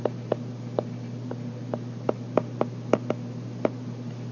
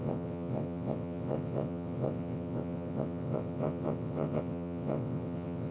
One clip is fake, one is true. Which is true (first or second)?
first